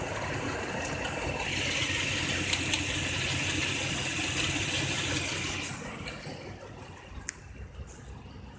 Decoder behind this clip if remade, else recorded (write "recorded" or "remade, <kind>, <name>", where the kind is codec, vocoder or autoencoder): recorded